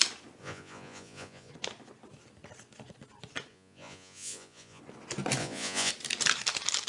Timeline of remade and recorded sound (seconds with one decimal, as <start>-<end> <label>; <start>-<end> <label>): 0.0-0.4 recorded; 0.4-1.5 remade; 1.5-3.5 recorded; 3.5-4.8 remade; 4.8-5.4 recorded; 5.4-5.9 remade; 5.9-6.9 recorded